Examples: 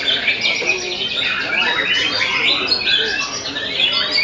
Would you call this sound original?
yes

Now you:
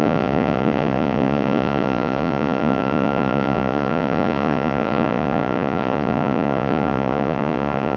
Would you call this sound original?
no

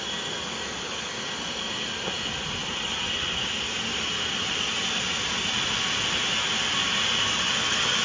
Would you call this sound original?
yes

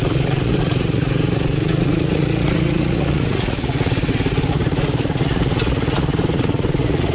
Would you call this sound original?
no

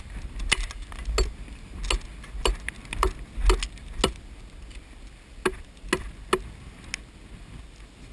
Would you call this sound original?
yes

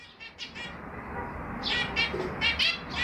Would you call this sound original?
yes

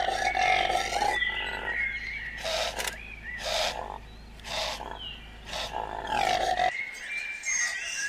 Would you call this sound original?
yes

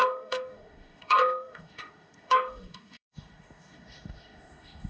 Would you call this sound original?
no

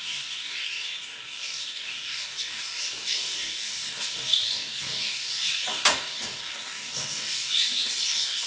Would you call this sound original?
no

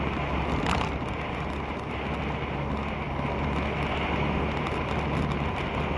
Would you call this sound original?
yes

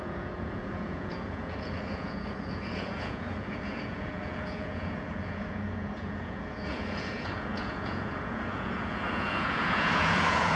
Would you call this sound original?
no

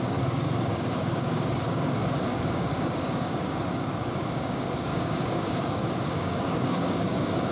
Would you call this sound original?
no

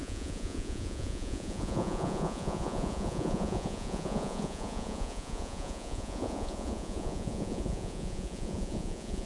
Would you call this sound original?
no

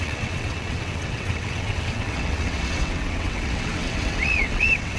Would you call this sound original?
no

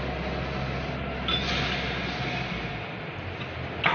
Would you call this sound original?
yes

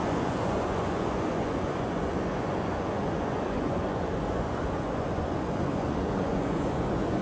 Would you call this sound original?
no